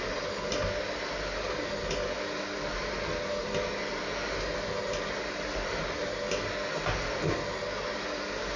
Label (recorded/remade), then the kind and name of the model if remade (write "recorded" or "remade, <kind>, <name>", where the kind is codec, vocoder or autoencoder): recorded